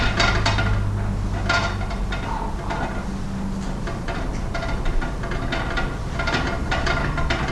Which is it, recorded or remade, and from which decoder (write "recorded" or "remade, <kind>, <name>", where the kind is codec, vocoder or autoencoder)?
recorded